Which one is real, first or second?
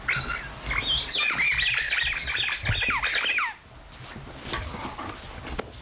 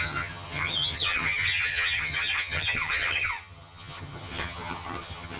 first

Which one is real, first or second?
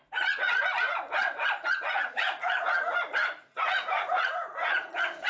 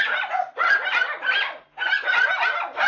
second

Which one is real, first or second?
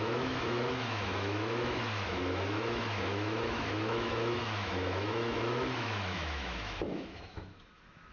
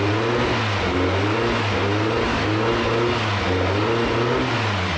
second